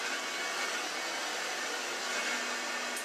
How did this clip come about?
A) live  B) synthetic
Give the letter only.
A